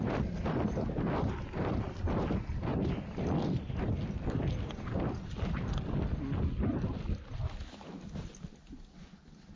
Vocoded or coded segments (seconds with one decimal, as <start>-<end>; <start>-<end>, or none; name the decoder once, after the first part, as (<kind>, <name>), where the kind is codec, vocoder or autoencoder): none